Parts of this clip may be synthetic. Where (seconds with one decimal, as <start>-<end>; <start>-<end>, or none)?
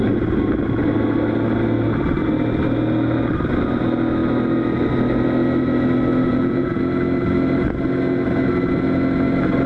6.3-6.8